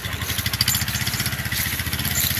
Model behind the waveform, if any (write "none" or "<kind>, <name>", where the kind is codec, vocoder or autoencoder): none